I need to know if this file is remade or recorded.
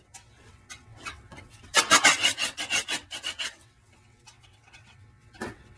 remade